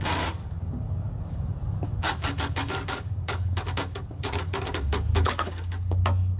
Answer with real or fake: fake